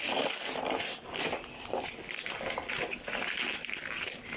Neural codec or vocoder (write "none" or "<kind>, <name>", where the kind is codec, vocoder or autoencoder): none